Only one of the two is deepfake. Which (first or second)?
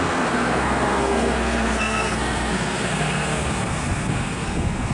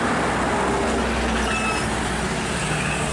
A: first